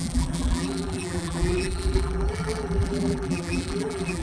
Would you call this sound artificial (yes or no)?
yes